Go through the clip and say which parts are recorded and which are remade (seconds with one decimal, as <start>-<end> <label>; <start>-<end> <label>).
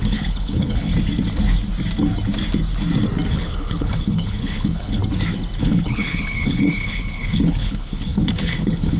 0.0-0.9 remade; 0.9-3.3 recorded; 3.3-5.0 remade; 5.0-5.6 recorded; 5.6-9.0 remade